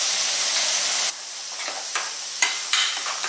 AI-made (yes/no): no